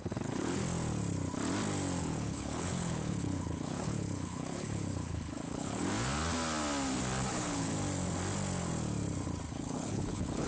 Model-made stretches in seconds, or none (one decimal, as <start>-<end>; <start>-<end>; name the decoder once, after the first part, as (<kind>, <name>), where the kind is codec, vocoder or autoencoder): 0.0-0.6 (codec, HILCodec); 2.0-5.9; 7.3-7.7; 9.5-10.5